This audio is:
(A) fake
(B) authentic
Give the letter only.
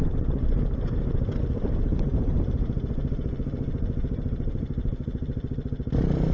A